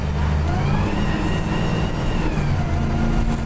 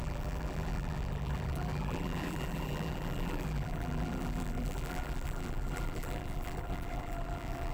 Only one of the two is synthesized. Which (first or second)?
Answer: second